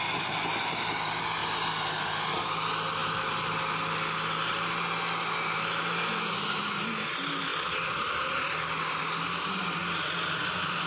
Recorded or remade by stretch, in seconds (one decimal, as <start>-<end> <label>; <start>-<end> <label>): 0.0-10.9 recorded

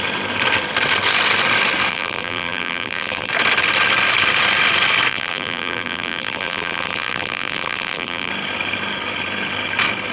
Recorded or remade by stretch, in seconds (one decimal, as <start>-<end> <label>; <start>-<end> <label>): 0.0-1.9 recorded; 1.9-3.3 remade; 3.3-5.1 recorded; 5.1-8.3 remade; 8.3-10.1 recorded

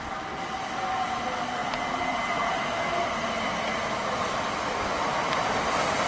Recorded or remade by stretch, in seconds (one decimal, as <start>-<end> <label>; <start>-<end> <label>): 0.0-6.1 recorded

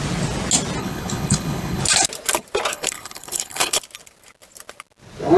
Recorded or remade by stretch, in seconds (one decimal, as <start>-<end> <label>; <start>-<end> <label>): 0.0-0.8 recorded; 0.8-1.8 remade; 1.8-2.7 recorded; 2.7-3.8 remade; 3.8-5.4 recorded

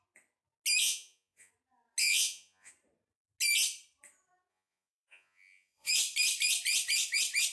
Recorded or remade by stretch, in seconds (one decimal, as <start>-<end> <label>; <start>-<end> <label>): 0.0-0.8 recorded; 0.8-1.5 remade; 1.5-2.0 recorded; 2.0-2.7 remade; 2.7-4.5 recorded; 4.5-5.9 remade; 5.9-7.5 recorded